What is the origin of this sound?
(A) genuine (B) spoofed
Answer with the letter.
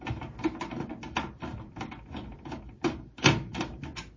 A